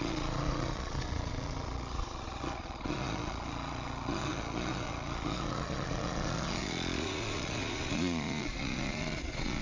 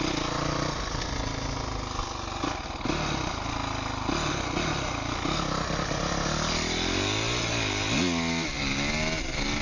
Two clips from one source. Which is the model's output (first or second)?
first